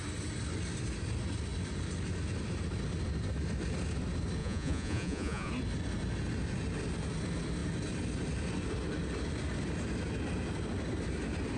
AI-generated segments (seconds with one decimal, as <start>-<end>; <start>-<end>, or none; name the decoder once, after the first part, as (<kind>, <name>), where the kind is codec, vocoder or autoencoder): 4.4-5.5 (vocoder, Vocos)